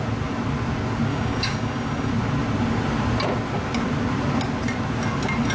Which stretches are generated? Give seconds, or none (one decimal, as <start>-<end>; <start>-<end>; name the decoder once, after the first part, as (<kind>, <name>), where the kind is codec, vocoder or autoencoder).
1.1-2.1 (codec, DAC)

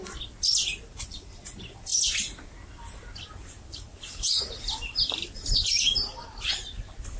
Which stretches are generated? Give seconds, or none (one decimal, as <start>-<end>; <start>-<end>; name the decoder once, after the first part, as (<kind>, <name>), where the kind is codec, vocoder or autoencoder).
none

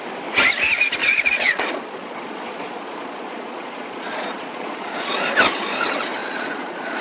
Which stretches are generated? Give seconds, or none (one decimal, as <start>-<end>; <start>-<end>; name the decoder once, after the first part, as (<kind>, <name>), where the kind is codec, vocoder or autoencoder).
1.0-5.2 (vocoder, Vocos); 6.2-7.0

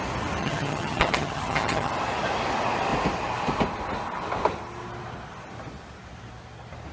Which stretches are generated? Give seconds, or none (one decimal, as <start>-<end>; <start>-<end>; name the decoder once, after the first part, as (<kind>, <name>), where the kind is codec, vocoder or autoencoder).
0.4-1.9 (vocoder, HiFi-GAN)